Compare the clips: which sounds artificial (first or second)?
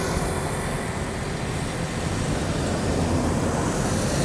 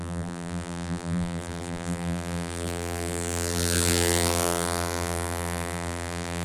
second